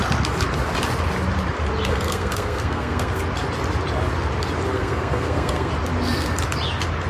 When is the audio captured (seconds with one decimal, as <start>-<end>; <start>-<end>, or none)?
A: 0.0-1.9; 3.2-4.7; 5.7-7.1